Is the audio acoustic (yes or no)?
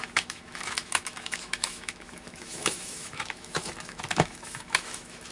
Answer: no